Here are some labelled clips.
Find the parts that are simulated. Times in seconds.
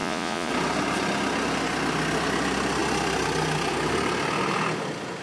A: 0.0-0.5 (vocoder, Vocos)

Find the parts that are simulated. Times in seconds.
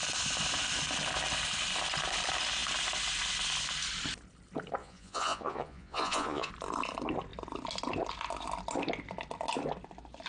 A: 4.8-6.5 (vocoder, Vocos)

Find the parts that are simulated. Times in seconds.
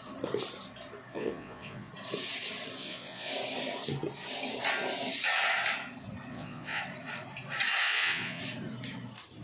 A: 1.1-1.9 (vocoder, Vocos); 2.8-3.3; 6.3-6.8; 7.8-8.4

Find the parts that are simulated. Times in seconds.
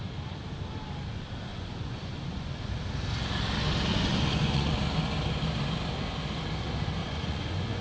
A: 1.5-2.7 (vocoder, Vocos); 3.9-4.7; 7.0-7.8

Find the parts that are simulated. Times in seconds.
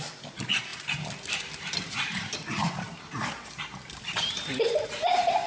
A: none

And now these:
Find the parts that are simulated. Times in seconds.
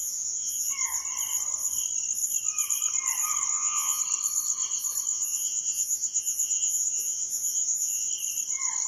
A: 0.0-0.7 (vocoder, Vocos); 3.5-4.0; 5.1-8.1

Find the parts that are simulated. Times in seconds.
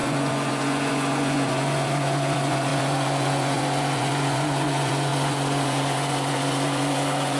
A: 0.0-7.4 (vocoder, Vocos)